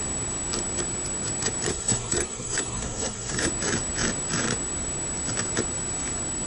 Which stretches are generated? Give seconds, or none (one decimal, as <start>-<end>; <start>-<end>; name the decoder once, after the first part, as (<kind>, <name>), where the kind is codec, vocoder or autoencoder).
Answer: 1.7-3.5 (codec, SNAC)